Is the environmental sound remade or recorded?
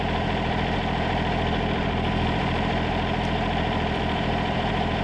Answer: remade